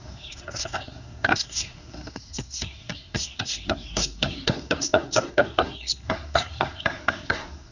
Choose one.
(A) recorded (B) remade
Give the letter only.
B